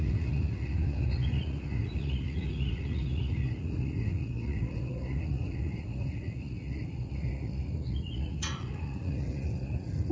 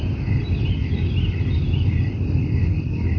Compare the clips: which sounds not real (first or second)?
first